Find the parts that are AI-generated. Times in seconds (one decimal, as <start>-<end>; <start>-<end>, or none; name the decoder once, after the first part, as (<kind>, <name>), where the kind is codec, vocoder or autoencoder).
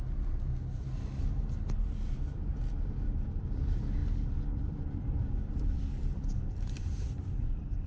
0.0-0.5 (vocoder, BigVGAN v2); 1.2-2.5; 3.4-7.9